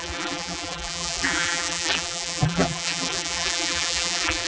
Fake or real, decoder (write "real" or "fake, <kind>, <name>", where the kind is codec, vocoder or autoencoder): fake, vocoder, BigVGAN v2